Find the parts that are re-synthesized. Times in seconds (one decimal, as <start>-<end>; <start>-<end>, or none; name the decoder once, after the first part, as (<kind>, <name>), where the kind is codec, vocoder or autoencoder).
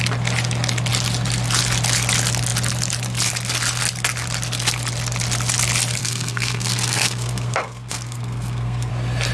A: 6.0-8.9 (codec, SNAC)